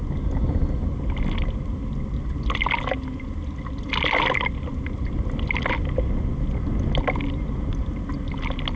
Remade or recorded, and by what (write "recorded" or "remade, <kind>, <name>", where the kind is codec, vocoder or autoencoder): recorded